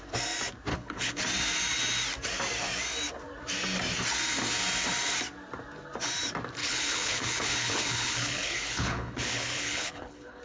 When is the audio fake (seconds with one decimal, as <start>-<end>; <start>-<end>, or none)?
0.7-1.2; 6.6-10.4